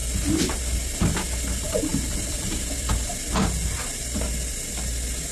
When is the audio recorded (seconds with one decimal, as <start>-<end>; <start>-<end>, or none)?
0.0-1.9; 2.9-5.3